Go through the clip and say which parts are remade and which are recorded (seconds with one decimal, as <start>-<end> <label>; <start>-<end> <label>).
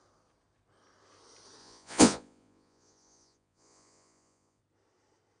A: 0.0-1.6 recorded; 1.6-4.6 remade; 4.6-5.4 recorded